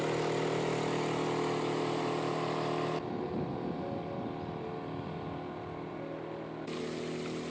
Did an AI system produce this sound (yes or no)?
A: no